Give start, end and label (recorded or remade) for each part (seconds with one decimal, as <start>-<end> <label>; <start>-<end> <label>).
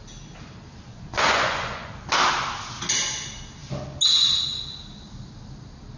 0.0-0.9 recorded; 0.9-2.0 remade; 2.0-6.0 recorded